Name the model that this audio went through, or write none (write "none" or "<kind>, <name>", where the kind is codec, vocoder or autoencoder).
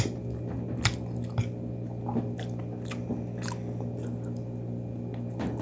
none